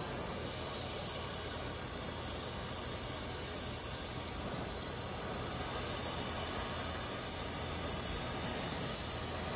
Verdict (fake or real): real